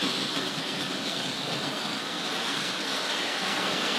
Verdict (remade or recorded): remade